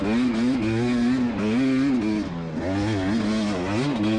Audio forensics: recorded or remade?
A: recorded